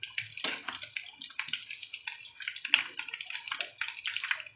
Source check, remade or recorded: recorded